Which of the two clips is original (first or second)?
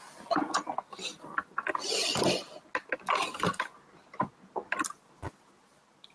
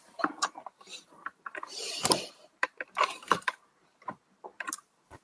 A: first